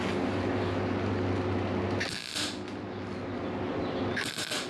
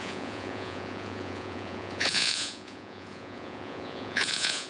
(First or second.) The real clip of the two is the first